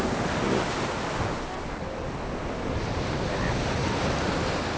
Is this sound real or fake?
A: real